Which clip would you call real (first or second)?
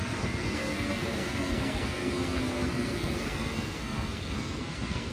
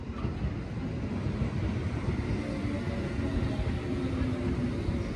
second